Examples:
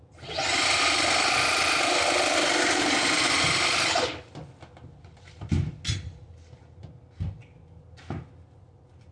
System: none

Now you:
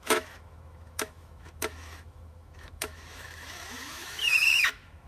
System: autoencoder, DAC-VAE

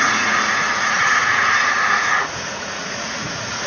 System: vocoder, Vocos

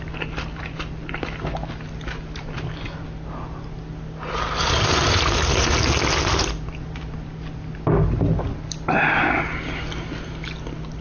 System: none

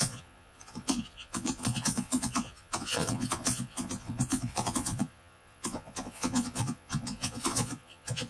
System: vocoder, Vocos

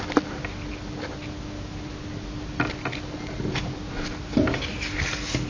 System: none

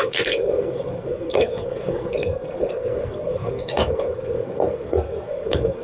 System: codec, SNAC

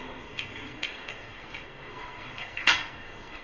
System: codec, SNAC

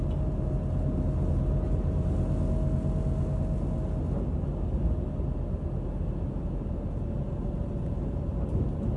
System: none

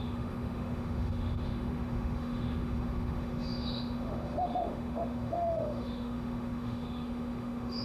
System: autoencoder, DAC-VAE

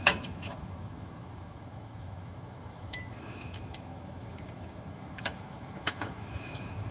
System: autoencoder, DAC-VAE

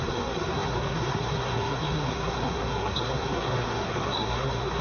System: codec, SNAC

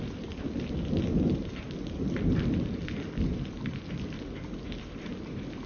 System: none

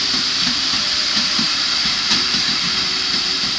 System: vocoder, BigVGAN v2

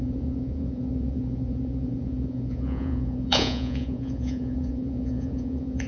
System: vocoder, Vocos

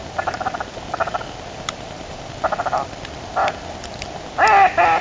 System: none